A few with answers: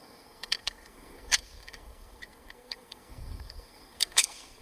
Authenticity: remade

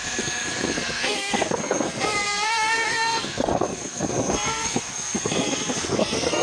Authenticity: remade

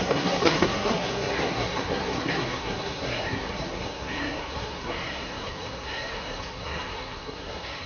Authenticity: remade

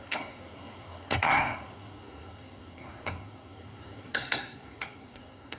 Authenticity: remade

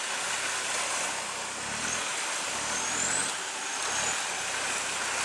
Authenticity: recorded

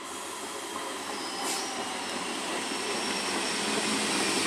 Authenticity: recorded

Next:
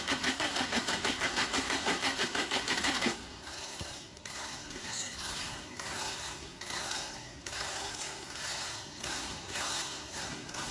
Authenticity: remade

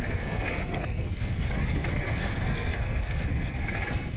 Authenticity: remade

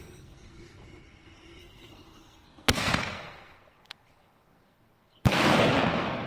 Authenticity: remade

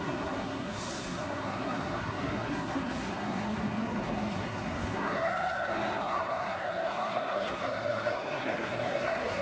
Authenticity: remade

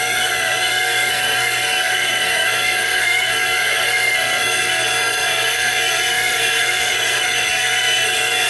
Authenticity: remade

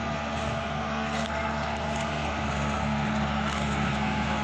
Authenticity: remade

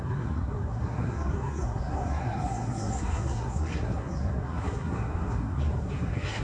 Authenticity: remade